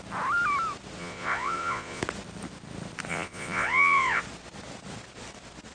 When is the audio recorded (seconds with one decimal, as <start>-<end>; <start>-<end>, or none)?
0.0-1.0; 2.0-3.1; 4.2-5.7